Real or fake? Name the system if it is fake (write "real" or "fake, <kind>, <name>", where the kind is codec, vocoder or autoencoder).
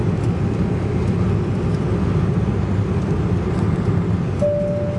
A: real